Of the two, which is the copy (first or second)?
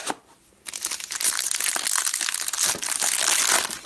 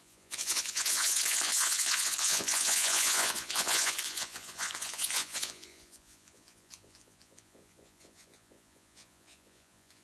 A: second